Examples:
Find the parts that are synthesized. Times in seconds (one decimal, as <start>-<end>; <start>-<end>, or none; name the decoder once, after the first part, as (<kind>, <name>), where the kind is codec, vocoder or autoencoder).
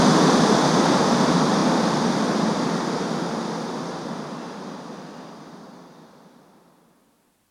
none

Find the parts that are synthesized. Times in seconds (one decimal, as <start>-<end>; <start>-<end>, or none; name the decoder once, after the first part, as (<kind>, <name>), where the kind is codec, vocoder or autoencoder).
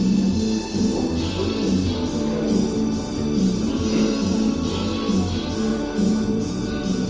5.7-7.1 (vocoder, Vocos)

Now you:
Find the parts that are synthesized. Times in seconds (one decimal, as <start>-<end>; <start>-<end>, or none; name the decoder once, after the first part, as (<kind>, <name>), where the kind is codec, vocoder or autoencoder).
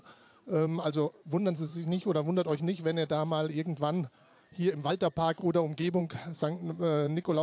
0.0-1.7 (vocoder, Vocos); 4.9-5.4; 6.0-7.4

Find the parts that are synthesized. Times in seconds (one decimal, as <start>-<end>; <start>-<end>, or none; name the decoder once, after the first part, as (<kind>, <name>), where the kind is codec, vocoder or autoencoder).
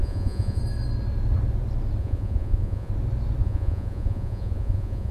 0.0-0.6 (vocoder, Vocos); 2.0-2.9; 3.4-5.1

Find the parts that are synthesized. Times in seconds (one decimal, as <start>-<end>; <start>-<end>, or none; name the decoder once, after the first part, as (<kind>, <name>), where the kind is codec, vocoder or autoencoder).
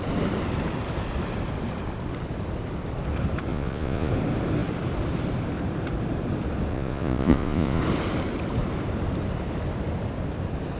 3.5-4.1 (vocoder, Vocos); 6.7-7.8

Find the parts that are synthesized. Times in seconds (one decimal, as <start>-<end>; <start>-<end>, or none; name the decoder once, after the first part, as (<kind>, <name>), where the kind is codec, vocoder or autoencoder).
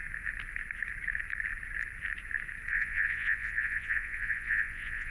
2.7-5.1 (vocoder, Vocos)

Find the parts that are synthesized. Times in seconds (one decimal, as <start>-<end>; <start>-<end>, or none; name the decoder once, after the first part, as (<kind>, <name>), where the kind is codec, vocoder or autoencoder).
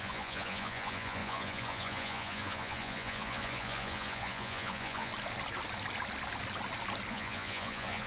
0.0-5.1 (vocoder, Vocos); 7.1-8.1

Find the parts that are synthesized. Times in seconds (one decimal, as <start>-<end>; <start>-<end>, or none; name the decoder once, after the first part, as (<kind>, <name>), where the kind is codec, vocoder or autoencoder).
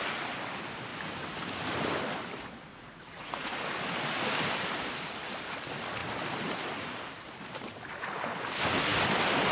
2.7-3.5 (vocoder, Vocos)